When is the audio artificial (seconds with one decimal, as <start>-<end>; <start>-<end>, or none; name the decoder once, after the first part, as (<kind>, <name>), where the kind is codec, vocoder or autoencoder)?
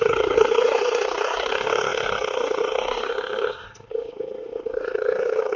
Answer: 0.0-5.6 (codec, SNAC)